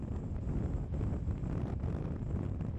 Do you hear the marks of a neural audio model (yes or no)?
no